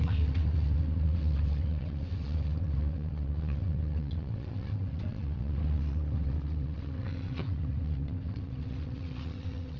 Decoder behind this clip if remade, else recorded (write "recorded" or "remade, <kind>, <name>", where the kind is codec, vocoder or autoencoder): remade, vocoder, WaveNeXt